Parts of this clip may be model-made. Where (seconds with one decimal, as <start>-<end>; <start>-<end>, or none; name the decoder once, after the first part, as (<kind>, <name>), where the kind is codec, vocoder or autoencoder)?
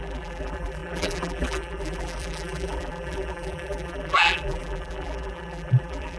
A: 0.0-6.2 (vocoder, BigVGAN v2)